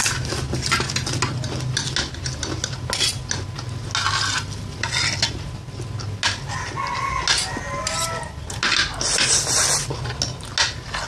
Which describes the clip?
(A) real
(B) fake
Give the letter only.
A